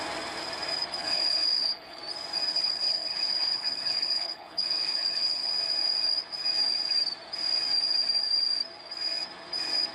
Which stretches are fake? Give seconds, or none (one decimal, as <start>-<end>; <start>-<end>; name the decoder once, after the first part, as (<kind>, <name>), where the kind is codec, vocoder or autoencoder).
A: 1.0-2.0 (codec, HILCodec); 2.5-5.5